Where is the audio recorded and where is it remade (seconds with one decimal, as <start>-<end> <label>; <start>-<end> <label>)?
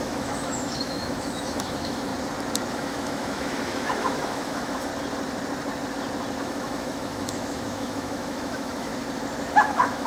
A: 0.0-2.1 remade; 2.1-2.7 recorded; 2.7-4.9 remade; 4.9-6.4 recorded; 6.4-8.9 remade; 8.9-9.6 recorded; 9.6-10.1 remade